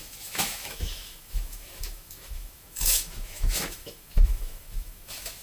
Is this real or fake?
fake